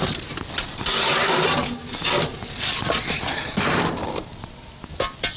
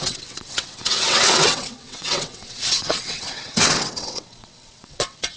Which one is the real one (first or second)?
first